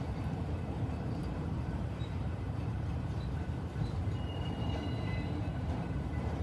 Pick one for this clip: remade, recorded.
remade